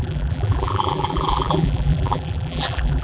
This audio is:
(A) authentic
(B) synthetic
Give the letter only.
B